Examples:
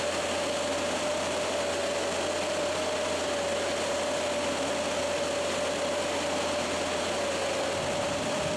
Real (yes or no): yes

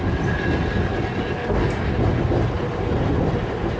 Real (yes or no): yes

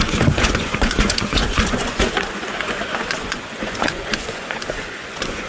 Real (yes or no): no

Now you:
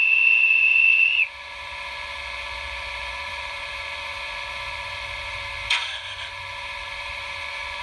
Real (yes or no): no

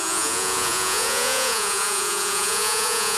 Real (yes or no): no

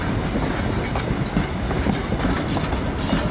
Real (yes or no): yes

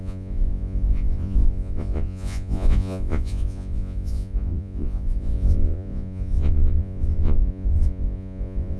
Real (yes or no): no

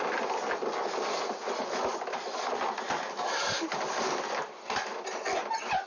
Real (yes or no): yes